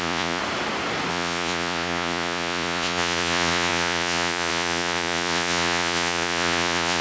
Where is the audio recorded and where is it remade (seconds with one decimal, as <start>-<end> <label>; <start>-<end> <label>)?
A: 0.0-0.4 remade; 0.4-1.1 recorded; 1.1-7.0 remade